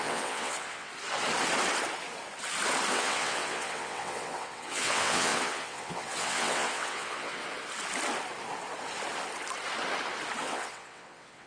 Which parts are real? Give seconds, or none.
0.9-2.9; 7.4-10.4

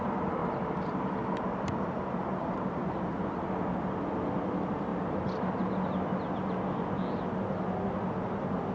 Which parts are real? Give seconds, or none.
0.0-0.4; 3.3-8.7